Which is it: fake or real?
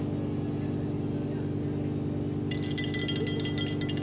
real